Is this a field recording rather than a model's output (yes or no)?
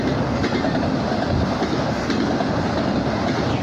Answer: no